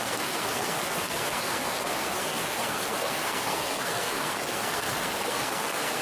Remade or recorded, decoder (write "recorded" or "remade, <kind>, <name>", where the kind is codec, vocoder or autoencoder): remade, codec, SNAC